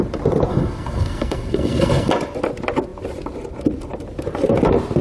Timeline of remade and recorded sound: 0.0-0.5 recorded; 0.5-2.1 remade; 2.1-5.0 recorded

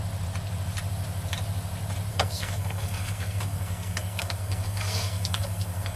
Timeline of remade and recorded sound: 0.0-2.1 recorded; 2.1-6.0 remade

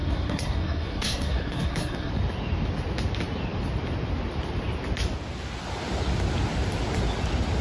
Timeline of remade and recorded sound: 0.0-2.1 remade; 2.1-7.6 recorded

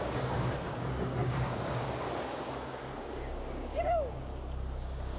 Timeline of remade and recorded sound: 0.0-4.3 remade; 4.3-4.8 recorded; 4.8-5.2 remade